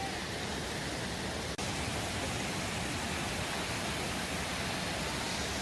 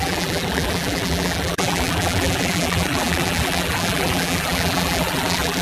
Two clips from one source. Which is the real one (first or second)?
first